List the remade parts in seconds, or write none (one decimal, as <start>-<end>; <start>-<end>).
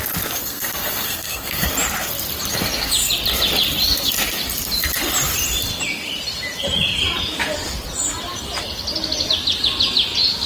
0.4-1.7